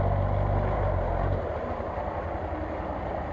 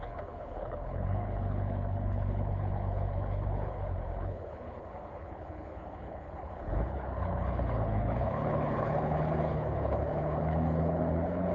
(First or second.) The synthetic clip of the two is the second